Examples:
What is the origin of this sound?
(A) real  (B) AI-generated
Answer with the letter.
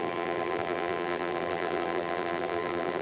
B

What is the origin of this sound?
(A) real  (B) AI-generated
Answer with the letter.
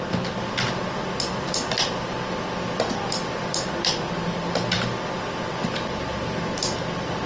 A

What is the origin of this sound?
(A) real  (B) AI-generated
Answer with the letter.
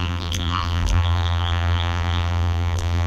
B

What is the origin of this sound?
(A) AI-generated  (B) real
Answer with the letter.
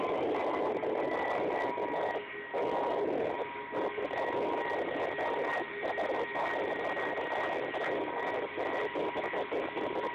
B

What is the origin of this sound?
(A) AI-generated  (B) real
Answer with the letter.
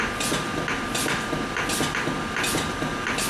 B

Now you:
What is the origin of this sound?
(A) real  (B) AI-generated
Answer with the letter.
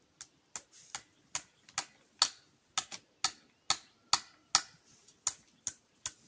A